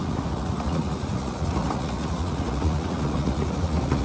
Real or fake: fake